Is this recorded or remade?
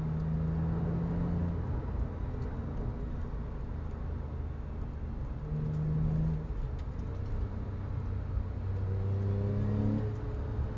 recorded